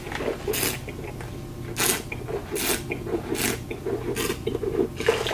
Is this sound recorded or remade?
recorded